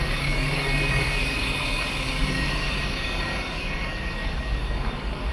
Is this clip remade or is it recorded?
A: remade